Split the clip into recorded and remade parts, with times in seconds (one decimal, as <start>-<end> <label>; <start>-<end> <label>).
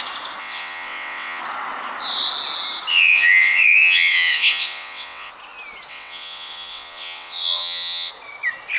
0.0-0.4 recorded; 0.4-1.4 remade; 1.4-2.9 recorded; 2.9-5.3 remade; 5.3-5.9 recorded; 5.9-8.1 remade; 8.1-8.8 recorded